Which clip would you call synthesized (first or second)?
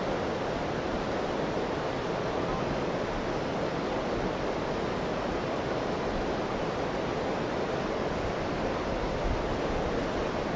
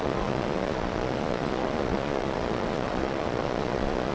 second